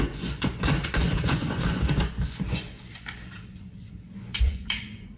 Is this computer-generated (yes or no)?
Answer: yes